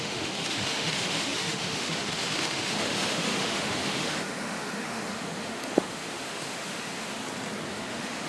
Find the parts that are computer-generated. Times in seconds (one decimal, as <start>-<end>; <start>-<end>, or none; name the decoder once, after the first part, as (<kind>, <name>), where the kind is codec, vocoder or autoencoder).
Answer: 0.0-7.2 (autoencoder, DAC-VAE); 7.7-8.3